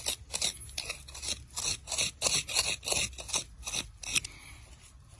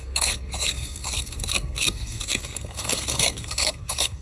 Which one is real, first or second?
first